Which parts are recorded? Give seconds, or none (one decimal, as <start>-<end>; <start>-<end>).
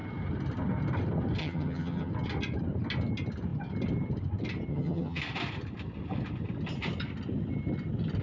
0.0-1.4; 2.1-4.7; 5.2-8.2